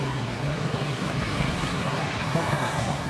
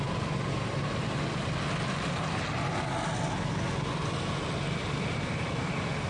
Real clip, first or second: second